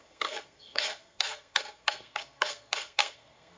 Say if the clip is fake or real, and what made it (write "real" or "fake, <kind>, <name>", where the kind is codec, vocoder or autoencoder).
fake, codec, SNAC